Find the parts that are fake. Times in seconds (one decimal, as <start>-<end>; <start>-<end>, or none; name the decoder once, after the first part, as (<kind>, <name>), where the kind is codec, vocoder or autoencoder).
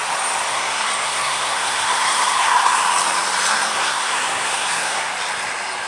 0.5-2.8 (codec, SNAC); 3.5-5.1